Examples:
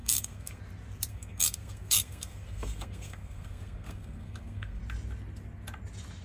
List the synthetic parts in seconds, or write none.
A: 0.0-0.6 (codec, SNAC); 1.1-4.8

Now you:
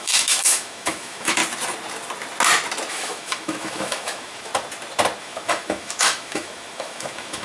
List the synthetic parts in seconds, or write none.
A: 0.0-1.4 (autoencoder, DAC-VAE); 2.9-4.5; 5.2-7.4

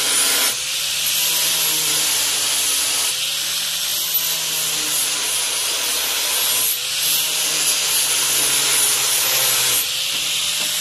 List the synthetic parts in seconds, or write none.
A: none